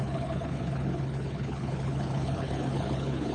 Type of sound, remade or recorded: remade